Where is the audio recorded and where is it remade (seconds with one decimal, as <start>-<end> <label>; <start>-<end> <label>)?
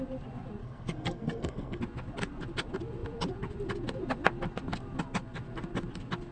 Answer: 0.0-0.6 recorded; 0.6-1.8 remade; 1.8-6.3 recorded